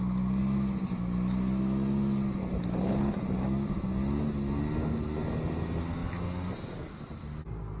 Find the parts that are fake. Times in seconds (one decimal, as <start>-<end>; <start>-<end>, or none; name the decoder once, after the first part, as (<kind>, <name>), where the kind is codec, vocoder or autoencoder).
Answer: none